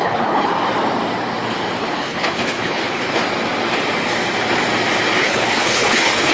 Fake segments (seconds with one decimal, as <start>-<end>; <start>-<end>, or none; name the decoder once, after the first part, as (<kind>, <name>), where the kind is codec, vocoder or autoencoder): 0.0-0.5 (codec, HILCodec); 1.8-3.2; 5.2-6.3